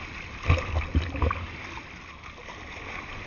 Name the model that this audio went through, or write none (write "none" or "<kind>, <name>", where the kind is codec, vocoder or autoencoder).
none